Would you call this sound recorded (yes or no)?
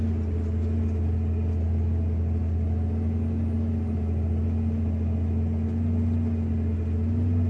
yes